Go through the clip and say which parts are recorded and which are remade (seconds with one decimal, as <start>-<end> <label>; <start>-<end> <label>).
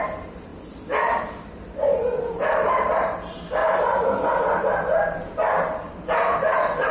0.0-0.5 remade; 0.5-1.6 recorded; 1.6-3.6 remade; 3.6-4.4 recorded; 4.4-6.9 remade